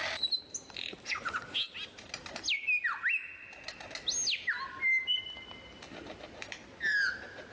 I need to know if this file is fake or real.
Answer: real